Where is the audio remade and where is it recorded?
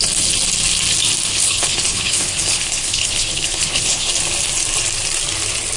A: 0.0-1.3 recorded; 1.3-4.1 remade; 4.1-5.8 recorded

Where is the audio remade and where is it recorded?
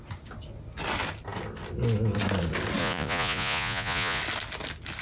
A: 0.0-2.8 recorded; 2.8-4.2 remade; 4.2-5.0 recorded